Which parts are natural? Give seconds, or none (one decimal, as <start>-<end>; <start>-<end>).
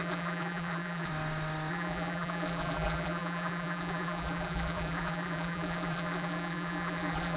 1.1-1.7